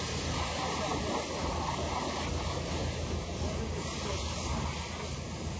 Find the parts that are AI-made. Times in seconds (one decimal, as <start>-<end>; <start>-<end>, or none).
none